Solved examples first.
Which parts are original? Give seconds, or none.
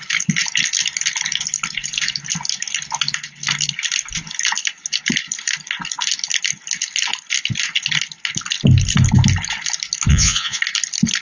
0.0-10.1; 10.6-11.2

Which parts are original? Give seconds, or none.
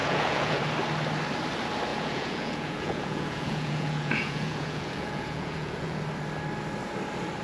0.6-1.9; 6.0-7.4